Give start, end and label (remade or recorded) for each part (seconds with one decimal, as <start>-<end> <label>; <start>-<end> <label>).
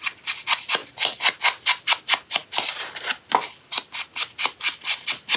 0.0-0.8 recorded; 0.8-1.3 remade; 1.3-5.4 recorded